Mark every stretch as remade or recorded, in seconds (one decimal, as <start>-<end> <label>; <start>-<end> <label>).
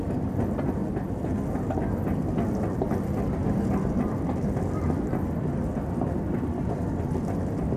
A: 0.0-3.4 recorded; 3.4-4.8 remade; 4.8-7.8 recorded